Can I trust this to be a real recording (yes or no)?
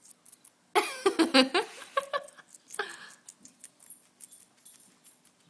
yes